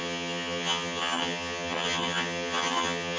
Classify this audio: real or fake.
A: fake